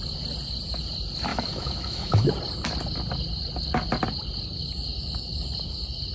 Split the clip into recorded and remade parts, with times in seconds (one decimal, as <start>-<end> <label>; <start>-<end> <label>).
0.0-1.3 recorded; 1.3-2.3 remade; 2.3-6.1 recorded